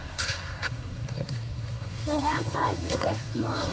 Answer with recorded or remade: remade